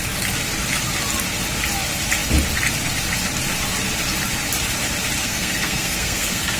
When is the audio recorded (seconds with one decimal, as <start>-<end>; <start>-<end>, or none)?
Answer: 0.0-5.2